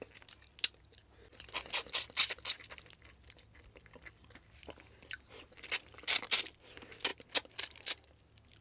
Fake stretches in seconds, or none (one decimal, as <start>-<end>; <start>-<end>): none

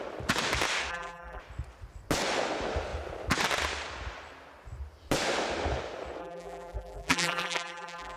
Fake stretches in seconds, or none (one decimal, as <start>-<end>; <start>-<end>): 0.9-1.4; 6.2-8.2

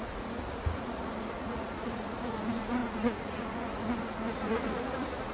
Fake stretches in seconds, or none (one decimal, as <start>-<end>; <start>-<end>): 0.0-5.3